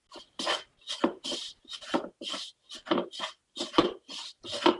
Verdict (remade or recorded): recorded